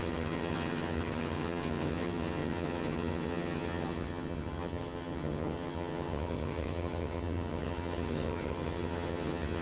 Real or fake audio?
fake